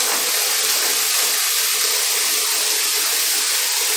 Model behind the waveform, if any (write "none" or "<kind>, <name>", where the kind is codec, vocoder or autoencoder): none